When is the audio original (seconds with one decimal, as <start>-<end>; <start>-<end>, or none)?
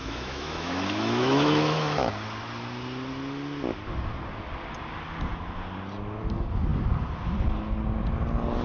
2.1-8.6